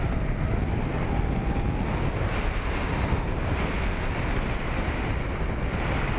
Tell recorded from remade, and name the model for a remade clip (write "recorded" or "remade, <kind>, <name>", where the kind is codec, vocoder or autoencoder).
recorded